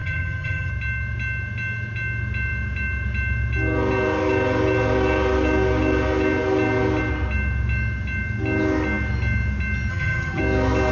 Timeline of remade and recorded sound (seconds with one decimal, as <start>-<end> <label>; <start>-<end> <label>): 0.0-0.7 remade; 0.7-9.9 recorded; 9.9-10.4 remade; 10.4-10.9 recorded